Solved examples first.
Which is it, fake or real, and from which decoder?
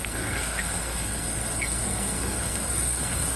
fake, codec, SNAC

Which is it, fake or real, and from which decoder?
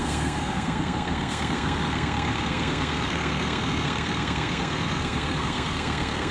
fake, codec, SNAC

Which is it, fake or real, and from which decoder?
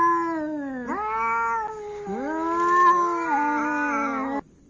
real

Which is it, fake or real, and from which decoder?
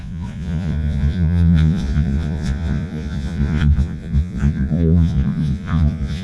fake, vocoder, Vocos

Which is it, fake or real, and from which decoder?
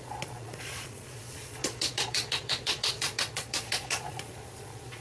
fake, vocoder, Vocos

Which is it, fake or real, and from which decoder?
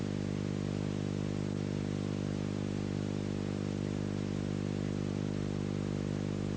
real